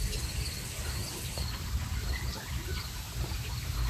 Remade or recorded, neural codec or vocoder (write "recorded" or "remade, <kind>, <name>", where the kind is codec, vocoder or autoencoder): recorded